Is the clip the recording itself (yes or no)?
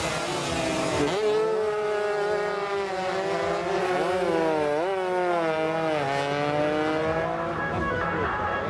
yes